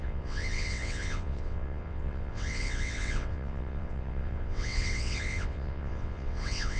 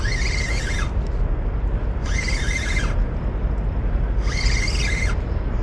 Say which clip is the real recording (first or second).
second